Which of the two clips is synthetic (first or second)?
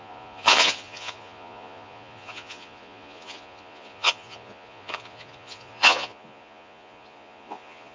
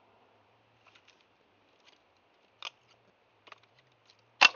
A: first